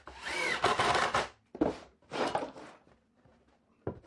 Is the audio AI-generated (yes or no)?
no